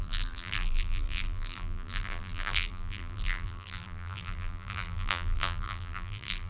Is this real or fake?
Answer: fake